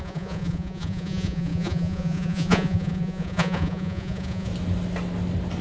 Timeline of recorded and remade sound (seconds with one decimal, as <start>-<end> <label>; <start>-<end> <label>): 0.0-4.5 remade; 4.5-5.6 recorded